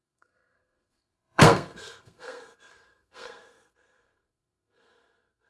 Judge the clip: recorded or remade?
remade